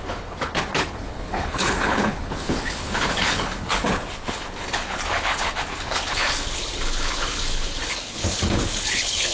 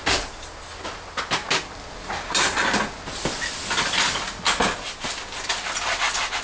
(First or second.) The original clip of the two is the second